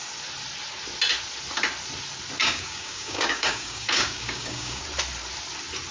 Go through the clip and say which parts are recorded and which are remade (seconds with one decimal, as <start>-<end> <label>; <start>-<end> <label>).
0.0-2.4 recorded; 2.4-4.8 remade; 4.8-5.9 recorded